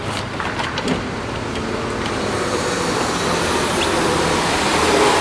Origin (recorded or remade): recorded